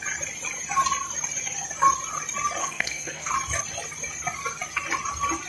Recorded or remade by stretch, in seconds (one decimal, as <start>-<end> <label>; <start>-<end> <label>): 0.0-2.6 recorded; 2.6-3.3 remade; 3.3-5.5 recorded